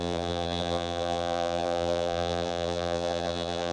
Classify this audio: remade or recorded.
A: remade